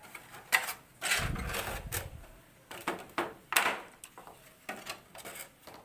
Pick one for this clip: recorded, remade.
recorded